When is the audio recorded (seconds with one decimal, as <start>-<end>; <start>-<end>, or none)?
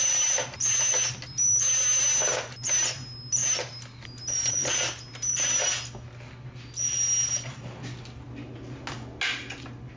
0.0-10.0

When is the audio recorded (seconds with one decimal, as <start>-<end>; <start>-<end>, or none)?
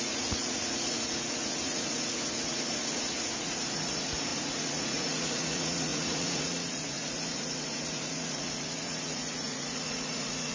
none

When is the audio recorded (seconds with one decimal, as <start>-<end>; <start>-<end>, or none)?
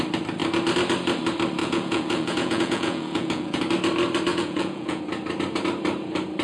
0.0-1.6; 3.6-4.3; 5.0-6.4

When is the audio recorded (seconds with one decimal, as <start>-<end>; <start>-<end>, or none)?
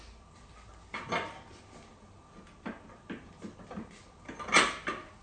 0.0-5.2